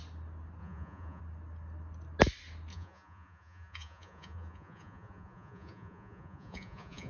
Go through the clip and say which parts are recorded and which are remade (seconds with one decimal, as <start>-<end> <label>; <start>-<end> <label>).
0.0-0.6 recorded; 0.6-1.2 remade; 1.2-2.7 recorded; 2.7-7.1 remade

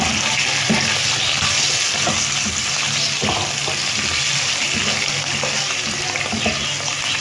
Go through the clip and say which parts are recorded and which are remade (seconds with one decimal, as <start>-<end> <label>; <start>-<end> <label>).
0.0-7.2 recorded

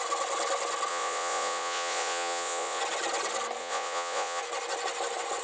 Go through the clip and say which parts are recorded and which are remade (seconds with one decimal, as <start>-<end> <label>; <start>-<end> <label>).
0.0-0.9 recorded; 0.9-2.8 remade; 2.8-3.6 recorded; 3.6-4.4 remade; 4.4-5.4 recorded

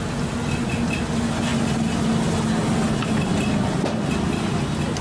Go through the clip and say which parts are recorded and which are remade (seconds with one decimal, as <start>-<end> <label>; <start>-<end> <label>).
0.0-5.0 recorded

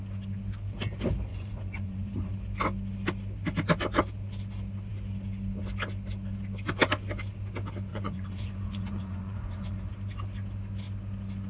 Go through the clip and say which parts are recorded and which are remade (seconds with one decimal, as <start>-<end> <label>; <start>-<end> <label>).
0.0-1.3 recorded; 1.3-2.3 remade; 2.3-7.9 recorded; 7.9-9.9 remade; 9.9-11.5 recorded

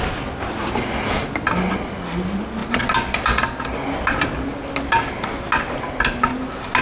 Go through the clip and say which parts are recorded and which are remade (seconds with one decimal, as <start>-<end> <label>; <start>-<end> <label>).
0.0-6.8 recorded

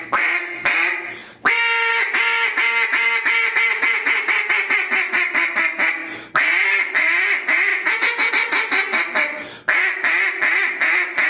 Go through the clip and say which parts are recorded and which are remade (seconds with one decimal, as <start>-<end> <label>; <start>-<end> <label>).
0.0-7.7 recorded; 7.7-8.3 remade; 8.3-11.3 recorded